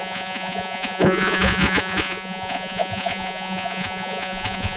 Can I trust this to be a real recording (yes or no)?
no